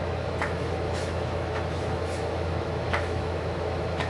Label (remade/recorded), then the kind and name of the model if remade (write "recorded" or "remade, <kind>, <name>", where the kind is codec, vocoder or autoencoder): remade, autoencoder, DAC-VAE